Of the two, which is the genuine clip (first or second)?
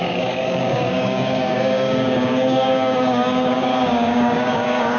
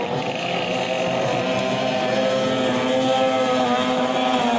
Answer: second